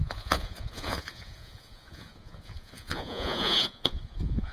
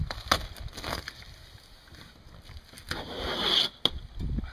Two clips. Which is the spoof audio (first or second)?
first